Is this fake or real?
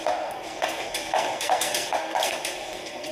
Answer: fake